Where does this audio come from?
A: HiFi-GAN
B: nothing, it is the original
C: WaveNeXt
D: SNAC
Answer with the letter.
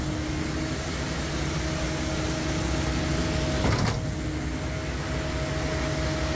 B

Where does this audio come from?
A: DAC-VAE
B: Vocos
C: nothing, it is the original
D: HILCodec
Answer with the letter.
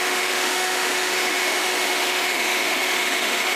A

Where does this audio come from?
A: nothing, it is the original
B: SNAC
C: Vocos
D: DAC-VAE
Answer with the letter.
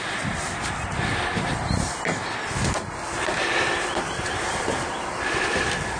A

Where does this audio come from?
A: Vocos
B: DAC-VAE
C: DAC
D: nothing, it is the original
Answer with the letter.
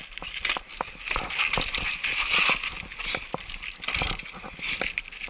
D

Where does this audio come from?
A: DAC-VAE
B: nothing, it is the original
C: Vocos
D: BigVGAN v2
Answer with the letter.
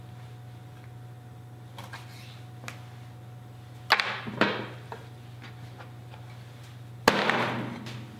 B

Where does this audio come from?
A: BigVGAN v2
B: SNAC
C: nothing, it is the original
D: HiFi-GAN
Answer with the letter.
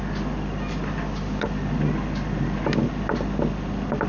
C